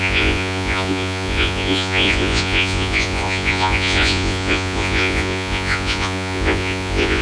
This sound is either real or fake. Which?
fake